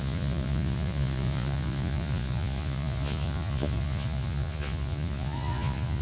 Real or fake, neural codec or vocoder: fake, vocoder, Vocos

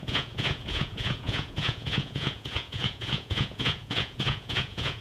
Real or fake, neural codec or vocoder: fake, vocoder, Vocos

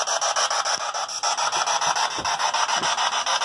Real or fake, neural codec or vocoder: real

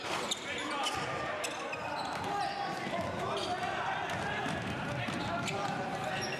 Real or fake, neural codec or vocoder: real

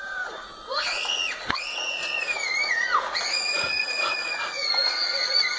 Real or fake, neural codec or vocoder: fake, vocoder, Vocos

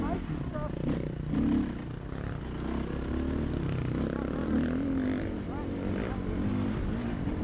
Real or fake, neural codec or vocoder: real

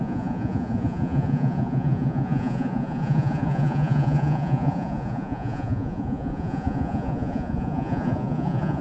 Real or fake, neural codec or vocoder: fake, vocoder, Vocos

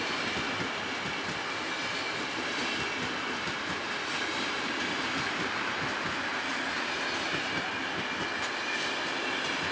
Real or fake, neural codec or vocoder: real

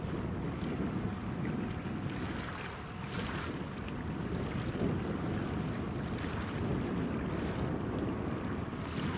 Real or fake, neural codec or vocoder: real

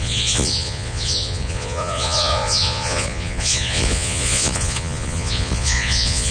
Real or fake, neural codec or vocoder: fake, vocoder, Vocos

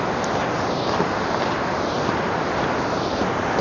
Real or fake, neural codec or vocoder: real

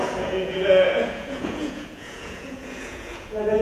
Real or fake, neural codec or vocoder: fake, vocoder, Vocos